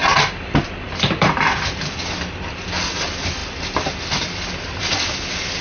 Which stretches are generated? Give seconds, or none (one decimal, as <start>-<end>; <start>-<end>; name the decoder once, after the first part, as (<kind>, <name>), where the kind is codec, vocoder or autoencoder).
0.0-2.1 (vocoder, BigVGAN v2)